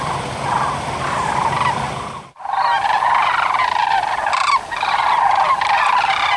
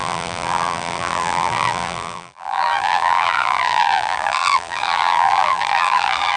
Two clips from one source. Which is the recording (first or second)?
first